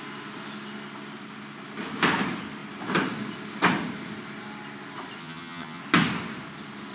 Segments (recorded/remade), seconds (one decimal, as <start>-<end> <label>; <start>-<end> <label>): 0.0-5.2 recorded; 5.2-5.8 remade; 5.8-6.9 recorded